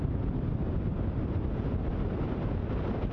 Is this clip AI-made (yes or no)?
no